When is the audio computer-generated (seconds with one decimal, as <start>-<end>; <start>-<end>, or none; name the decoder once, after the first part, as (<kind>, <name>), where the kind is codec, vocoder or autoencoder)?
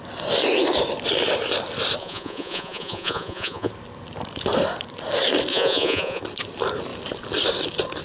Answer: 2.0-3.7 (vocoder, Vocos); 5.5-6.2